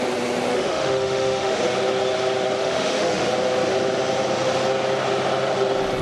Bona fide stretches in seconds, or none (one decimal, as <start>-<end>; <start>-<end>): 0.0-0.5; 1.6-2.6; 3.3-6.0